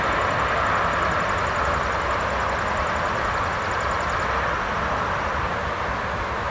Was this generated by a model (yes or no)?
no